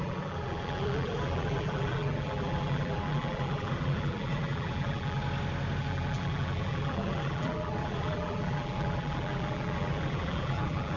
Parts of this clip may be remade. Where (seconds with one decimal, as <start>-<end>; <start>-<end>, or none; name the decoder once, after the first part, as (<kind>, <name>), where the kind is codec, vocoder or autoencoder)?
0.0-5.2 (vocoder, BigVGAN v2); 5.8-11.0